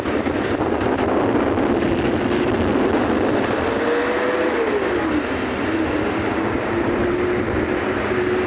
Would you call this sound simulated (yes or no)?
no